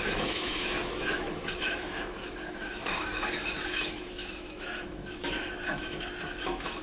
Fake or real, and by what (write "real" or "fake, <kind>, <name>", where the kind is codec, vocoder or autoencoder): fake, autoencoder, DAC-VAE